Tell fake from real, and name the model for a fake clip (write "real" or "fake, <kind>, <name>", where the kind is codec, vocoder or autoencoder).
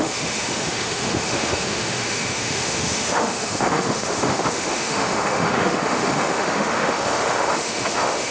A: fake, autoencoder, DAC-VAE